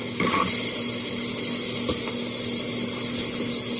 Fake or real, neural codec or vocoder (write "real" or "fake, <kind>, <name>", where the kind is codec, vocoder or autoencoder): real